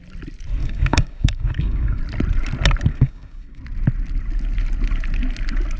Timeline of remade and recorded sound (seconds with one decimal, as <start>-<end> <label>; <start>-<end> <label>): 0.0-0.6 recorded; 0.6-2.0 remade; 2.0-2.9 recorded; 2.9-3.6 remade; 3.6-5.8 recorded